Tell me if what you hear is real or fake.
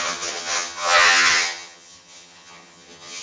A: fake